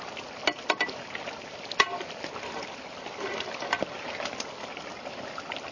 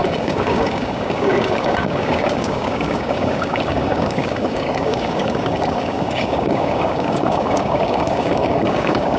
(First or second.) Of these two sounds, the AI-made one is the second